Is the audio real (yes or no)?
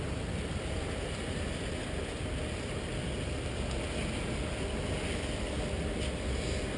yes